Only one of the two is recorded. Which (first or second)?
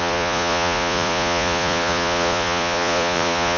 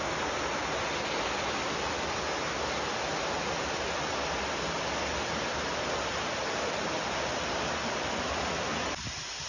second